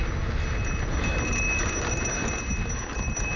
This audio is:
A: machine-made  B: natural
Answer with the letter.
B